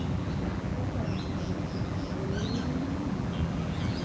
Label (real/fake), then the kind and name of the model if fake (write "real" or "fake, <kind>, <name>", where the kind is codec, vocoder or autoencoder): fake, vocoder, BigVGAN v2